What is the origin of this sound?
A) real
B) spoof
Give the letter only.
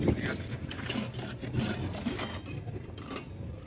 A